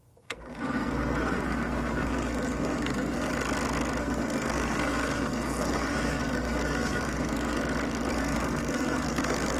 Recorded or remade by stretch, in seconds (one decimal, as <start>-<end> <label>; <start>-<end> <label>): 0.0-3.3 remade; 3.3-4.0 recorded; 4.0-7.6 remade; 7.6-8.1 recorded; 8.1-9.6 remade